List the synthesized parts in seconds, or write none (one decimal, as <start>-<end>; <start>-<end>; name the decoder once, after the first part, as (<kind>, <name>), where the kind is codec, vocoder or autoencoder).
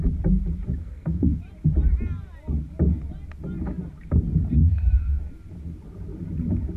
0.8-1.4 (codec, SNAC); 4.6-5.2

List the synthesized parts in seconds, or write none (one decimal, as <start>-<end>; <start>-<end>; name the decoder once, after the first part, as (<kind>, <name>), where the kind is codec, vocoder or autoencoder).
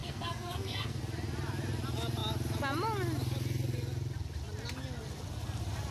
0.0-1.0 (codec, SNAC)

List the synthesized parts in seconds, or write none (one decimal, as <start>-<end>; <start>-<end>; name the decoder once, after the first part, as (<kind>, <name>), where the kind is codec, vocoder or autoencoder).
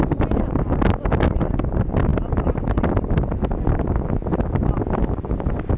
none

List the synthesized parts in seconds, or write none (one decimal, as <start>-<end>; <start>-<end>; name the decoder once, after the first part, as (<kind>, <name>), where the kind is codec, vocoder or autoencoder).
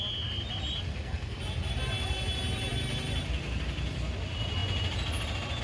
0.9-1.4 (codec, SNAC)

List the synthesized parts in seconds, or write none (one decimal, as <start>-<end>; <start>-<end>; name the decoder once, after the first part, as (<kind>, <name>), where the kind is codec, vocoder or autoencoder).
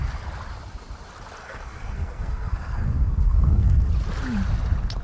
1.4-3.9 (codec, SNAC)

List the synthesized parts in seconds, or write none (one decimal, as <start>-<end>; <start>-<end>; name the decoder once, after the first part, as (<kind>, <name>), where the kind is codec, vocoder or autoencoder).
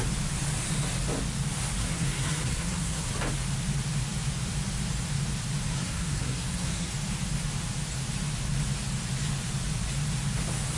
1.8-3.1 (codec, SNAC); 5.7-6.9